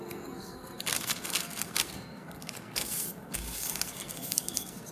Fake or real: fake